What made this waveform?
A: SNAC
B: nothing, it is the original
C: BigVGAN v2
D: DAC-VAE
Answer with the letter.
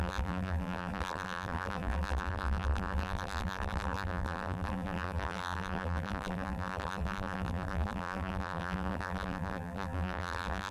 C